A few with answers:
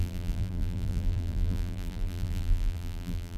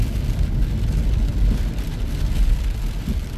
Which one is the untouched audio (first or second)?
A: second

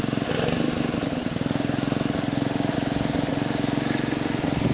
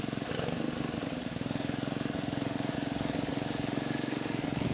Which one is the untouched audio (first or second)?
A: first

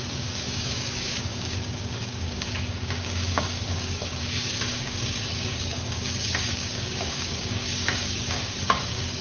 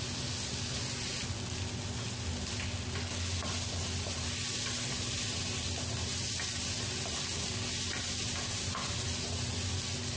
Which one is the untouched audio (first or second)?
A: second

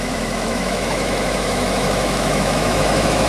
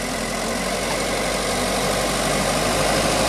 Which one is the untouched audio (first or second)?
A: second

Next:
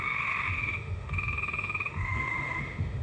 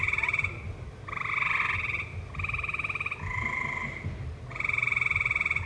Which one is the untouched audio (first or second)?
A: second